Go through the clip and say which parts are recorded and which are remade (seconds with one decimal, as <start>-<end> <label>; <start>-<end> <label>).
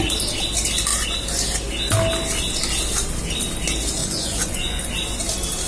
0.0-4.0 recorded; 4.0-4.8 remade; 4.8-5.7 recorded